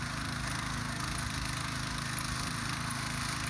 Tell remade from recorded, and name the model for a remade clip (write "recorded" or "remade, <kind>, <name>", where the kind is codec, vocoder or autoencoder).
recorded